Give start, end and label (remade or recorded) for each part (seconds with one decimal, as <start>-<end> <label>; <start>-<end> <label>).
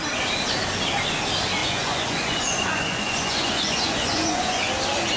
0.0-1.6 recorded; 1.6-4.7 remade; 4.7-5.2 recorded